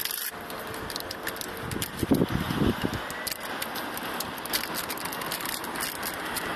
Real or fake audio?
real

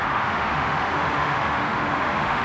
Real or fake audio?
fake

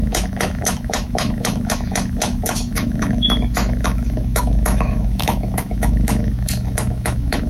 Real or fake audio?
fake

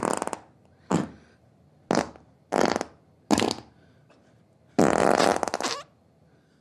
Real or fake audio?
real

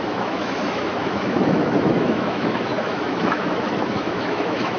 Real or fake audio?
fake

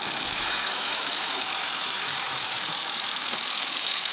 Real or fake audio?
fake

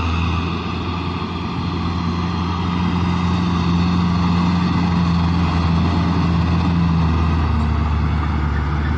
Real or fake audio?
real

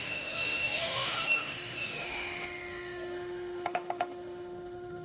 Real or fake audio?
fake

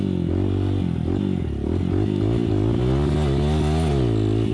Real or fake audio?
real